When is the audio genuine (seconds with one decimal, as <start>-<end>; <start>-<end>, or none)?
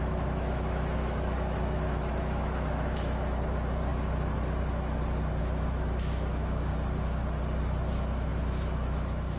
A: 3.9-5.4; 6.7-7.9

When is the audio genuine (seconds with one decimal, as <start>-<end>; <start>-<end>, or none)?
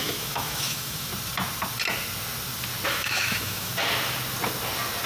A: 1.1-2.9; 3.7-5.1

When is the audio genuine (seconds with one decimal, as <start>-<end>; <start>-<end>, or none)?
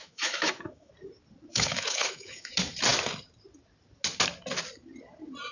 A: 0.9-1.5; 2.5-5.5